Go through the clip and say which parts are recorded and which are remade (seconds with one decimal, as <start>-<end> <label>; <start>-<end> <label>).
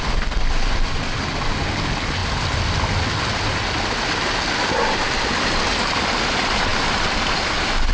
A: 0.0-7.9 recorded